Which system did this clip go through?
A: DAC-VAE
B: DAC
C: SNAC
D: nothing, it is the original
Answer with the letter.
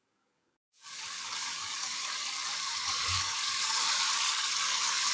B